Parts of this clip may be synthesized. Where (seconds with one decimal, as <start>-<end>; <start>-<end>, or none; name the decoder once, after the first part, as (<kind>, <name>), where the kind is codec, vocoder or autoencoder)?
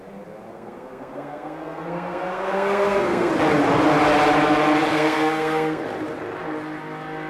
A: 0.5-3.3 (codec, SNAC); 4.9-5.8